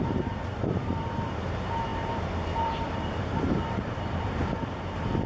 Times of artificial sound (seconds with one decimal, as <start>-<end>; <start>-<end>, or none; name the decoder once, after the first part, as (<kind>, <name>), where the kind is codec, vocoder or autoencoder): 0.0-5.3 (vocoder, BigVGAN v2)